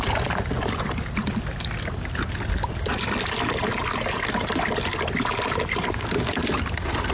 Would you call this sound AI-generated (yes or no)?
no